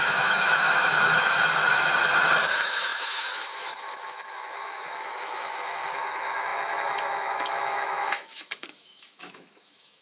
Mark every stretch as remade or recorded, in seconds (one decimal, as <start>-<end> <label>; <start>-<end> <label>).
0.0-1.4 remade; 1.4-2.5 recorded; 2.5-10.0 remade